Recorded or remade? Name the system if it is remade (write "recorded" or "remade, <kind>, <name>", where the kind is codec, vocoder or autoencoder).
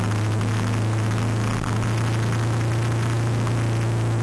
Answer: recorded